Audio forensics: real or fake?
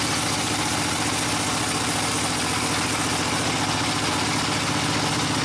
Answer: real